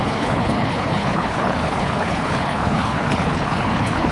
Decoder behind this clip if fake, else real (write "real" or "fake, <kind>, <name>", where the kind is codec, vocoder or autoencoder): fake, codec, HILCodec